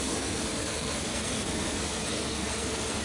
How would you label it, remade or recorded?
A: remade